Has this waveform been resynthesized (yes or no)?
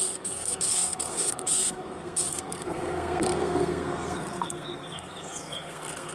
yes